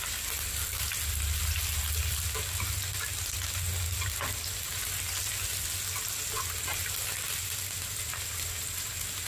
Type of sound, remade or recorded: recorded